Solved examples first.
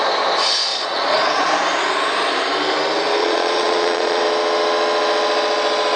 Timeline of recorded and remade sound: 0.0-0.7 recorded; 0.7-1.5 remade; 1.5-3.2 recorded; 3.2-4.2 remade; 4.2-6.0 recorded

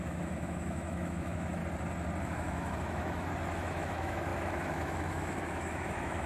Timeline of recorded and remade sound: 0.0-1.6 remade; 1.6-2.2 recorded; 2.2-6.3 remade

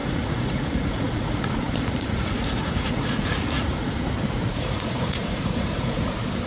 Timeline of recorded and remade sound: 0.0-3.9 remade; 3.9-4.5 recorded; 4.5-6.1 remade; 6.1-6.5 recorded

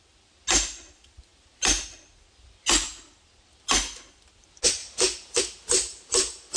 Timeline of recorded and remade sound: 0.0-6.6 recorded

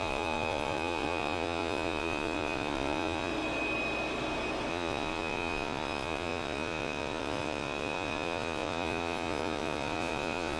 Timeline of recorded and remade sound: 0.0-3.3 remade; 3.3-4.7 recorded; 4.7-10.6 remade

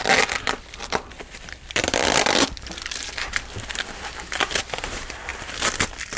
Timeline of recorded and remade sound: 0.0-6.2 remade

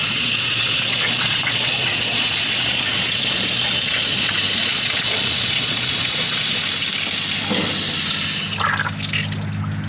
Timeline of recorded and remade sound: 0.0-4.3 remade; 4.3-4.7 recorded; 4.7-6.6 remade; 6.6-9.9 recorded

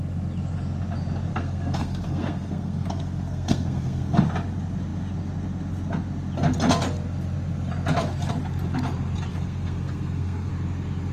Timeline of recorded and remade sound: 0.0-1.3 recorded; 1.3-4.2 remade; 4.2-9.3 recorded; 9.3-10.5 remade; 10.5-11.1 recorded